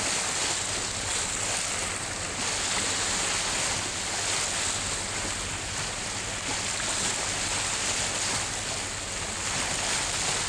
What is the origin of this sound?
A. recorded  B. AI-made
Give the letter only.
A